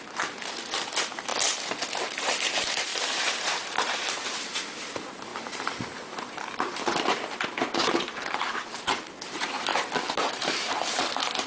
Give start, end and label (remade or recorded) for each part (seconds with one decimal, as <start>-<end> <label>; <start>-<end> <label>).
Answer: 0.0-1.3 remade; 1.3-2.0 recorded; 2.0-9.7 remade; 9.7-10.3 recorded; 10.3-11.5 remade